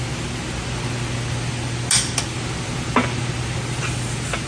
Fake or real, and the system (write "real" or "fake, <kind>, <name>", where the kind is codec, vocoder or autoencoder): real